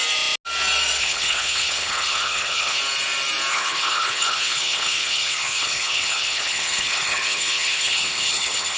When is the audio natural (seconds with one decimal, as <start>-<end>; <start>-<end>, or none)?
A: 0.0-1.0; 2.8-3.5